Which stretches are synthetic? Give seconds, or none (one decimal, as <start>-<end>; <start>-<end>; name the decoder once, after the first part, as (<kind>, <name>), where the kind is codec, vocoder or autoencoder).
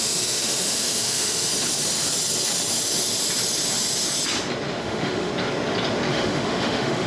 0.0-1.5 (autoencoder, DAC-VAE); 4.8-5.3; 6.1-7.1